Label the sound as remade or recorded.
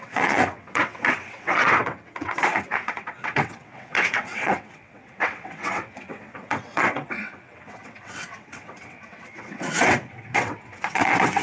remade